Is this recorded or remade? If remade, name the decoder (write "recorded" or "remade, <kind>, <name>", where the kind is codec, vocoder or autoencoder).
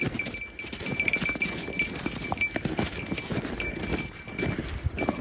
recorded